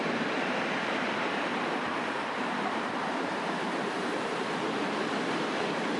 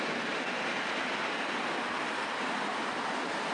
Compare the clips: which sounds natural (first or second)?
second